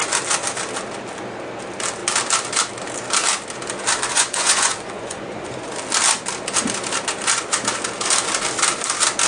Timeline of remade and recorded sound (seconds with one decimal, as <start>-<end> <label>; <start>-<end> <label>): 0.0-4.1 recorded; 4.1-5.7 remade; 5.7-9.3 recorded